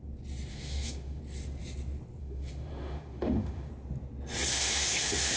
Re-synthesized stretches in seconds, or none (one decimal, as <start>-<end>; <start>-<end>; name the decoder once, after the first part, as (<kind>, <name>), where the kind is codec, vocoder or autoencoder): 0.5-1.2 (autoencoder, DAC-VAE); 2.2-3.7; 4.5-5.4